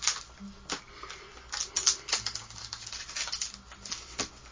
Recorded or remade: recorded